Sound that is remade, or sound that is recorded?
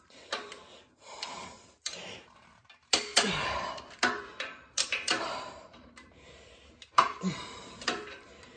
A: remade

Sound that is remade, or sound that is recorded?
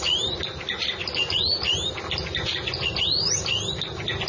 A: recorded